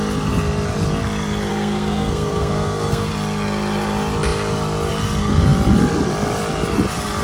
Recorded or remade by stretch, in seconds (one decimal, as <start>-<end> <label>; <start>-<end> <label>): 0.0-1.5 recorded; 1.5-3.1 remade; 3.1-7.2 recorded